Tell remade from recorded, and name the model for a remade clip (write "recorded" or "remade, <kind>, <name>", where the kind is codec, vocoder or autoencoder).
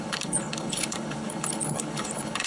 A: remade, codec, HILCodec